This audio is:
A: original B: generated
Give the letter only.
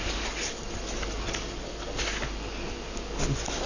A